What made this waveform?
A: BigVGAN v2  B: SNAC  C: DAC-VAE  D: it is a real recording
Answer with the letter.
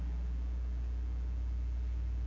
D